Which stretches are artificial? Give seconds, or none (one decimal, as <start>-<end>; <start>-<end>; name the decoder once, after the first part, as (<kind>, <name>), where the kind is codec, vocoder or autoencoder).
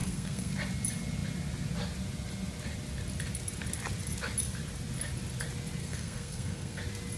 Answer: 0.0-0.5 (codec, SNAC); 5.8-6.8